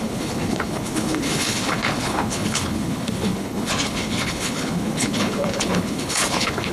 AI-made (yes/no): yes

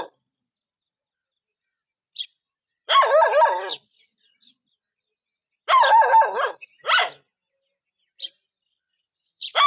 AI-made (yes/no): no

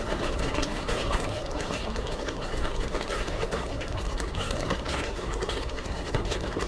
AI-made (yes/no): yes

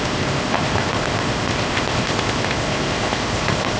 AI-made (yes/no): yes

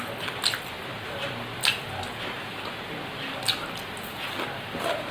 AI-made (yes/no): no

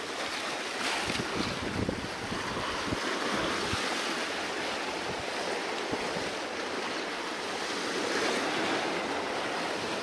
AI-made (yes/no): no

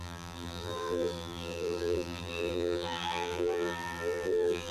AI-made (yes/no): yes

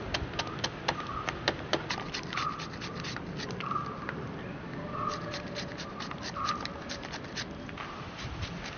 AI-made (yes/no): no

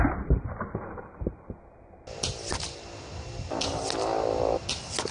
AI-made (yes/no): no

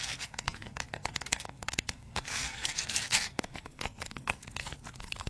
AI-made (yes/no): yes